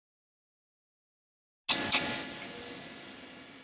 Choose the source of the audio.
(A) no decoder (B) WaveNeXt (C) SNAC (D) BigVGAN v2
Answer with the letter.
A